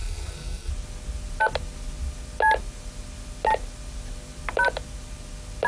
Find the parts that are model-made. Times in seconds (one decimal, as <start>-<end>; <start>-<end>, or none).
0.0-0.7